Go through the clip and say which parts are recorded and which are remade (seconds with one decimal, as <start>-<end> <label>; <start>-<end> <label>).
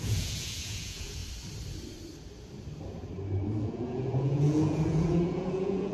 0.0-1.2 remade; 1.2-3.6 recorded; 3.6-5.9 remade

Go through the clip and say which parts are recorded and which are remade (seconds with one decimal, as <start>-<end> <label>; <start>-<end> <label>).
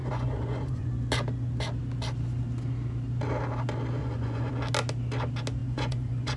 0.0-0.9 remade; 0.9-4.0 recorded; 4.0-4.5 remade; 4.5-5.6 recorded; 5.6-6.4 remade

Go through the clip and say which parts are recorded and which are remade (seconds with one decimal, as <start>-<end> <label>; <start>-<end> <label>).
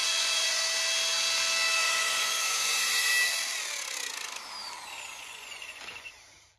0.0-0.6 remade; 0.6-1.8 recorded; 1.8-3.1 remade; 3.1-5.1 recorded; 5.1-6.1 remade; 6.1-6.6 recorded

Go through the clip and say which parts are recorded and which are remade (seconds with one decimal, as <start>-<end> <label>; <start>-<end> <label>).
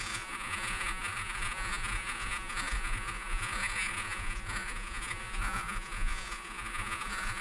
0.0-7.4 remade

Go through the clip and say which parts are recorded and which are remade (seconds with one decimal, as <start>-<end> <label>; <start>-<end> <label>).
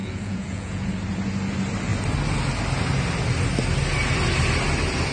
0.0-0.9 remade; 0.9-5.1 recorded